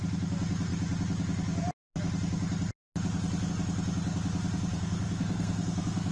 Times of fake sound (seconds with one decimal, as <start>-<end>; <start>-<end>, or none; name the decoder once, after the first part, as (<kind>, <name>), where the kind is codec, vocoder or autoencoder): 4.7-6.1 (codec, SNAC)